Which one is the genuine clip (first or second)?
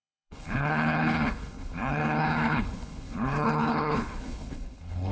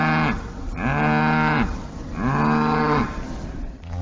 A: second